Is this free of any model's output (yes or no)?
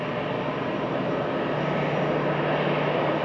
yes